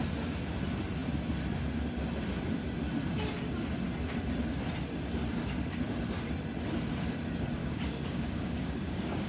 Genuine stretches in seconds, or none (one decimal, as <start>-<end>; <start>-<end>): 0.0-7.6